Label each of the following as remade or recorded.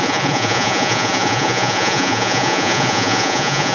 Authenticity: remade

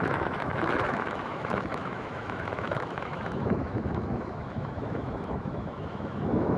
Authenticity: remade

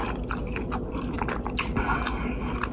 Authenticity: recorded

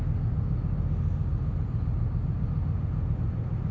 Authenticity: recorded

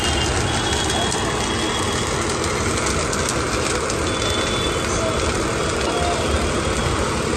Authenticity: recorded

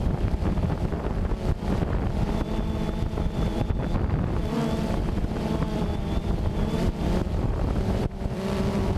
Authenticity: remade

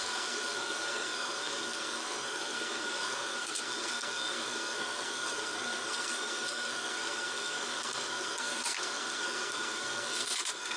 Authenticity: remade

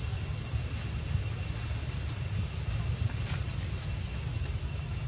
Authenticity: recorded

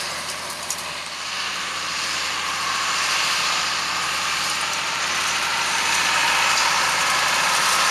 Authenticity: remade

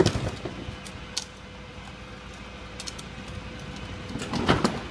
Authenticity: recorded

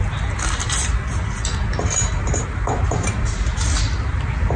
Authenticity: recorded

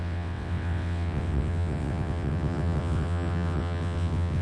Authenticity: remade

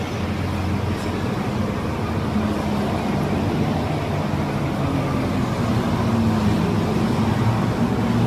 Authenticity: recorded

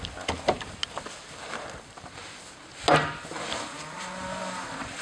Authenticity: recorded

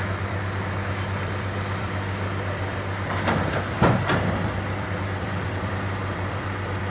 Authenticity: remade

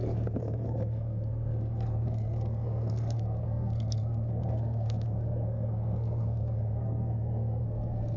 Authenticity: remade